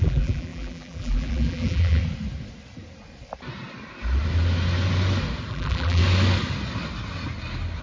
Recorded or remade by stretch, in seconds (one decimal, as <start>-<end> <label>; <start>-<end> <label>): 0.0-2.0 remade; 2.0-5.5 recorded; 5.5-6.0 remade; 6.0-7.8 recorded